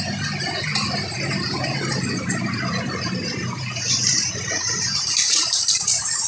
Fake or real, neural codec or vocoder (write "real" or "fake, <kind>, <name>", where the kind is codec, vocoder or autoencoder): fake, vocoder, BigVGAN v2